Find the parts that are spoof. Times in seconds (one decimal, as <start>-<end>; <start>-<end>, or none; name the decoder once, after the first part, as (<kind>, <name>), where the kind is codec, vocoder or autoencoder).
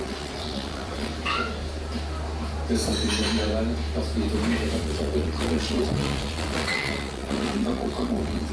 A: 0.0-1.1 (vocoder, WaveNeXt); 4.8-8.5